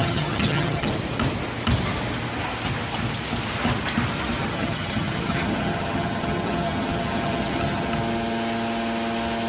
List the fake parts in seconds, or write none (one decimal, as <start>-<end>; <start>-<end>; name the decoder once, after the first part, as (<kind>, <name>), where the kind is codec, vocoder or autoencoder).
0.0-0.9 (vocoder, HiFi-GAN); 4.4-7.9